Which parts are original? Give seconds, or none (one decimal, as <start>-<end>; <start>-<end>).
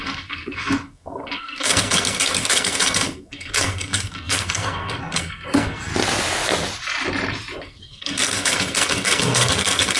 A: 5.9-7.6